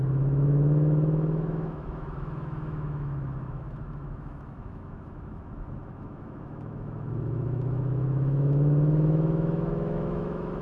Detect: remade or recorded remade